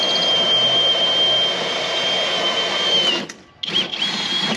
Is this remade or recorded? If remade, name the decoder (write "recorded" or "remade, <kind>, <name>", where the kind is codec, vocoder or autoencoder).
recorded